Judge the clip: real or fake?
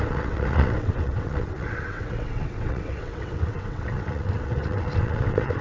fake